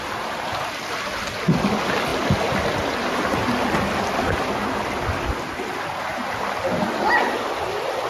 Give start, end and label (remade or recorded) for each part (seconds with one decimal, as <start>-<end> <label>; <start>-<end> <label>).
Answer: 0.0-8.1 recorded